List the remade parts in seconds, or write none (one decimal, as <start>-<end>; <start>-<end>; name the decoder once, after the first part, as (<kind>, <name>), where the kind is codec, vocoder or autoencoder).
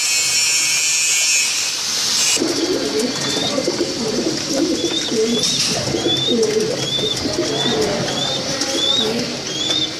3.4-6.5 (vocoder, BigVGAN v2)